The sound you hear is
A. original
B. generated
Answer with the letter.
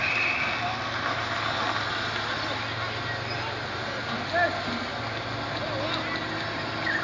A